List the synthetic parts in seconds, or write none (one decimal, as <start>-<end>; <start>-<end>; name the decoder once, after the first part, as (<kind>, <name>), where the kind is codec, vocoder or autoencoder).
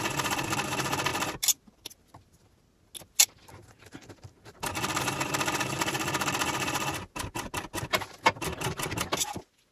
none